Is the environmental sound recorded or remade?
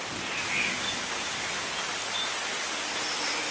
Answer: recorded